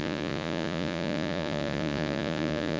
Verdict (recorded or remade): remade